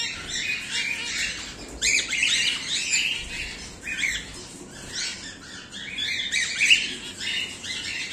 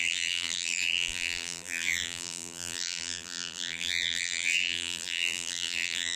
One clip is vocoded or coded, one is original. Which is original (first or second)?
first